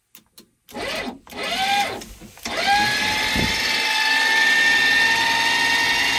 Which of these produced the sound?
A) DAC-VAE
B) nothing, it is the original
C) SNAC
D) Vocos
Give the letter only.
B